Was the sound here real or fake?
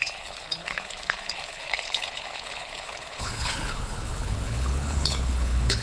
fake